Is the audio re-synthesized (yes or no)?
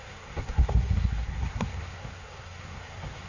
yes